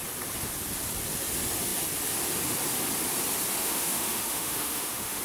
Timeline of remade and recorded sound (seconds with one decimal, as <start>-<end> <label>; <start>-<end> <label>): 0.0-3.6 recorded; 3.6-5.2 remade